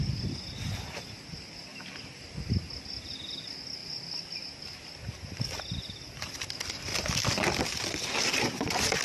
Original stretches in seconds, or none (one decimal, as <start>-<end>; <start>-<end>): 0.0-9.0